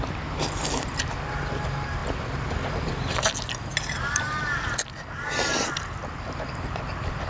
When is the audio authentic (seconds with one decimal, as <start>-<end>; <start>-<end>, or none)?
0.0-7.3